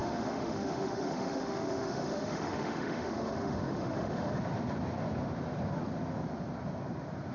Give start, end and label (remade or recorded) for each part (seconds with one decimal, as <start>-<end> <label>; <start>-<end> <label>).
0.0-4.4 remade; 4.4-7.3 recorded